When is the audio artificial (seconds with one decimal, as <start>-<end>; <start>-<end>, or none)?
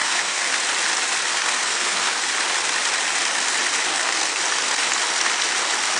0.0-0.5; 1.3-2.2; 3.9-4.4